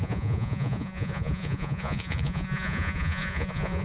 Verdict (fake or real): fake